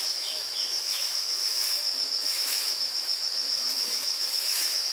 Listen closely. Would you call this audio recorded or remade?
remade